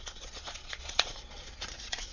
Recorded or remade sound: remade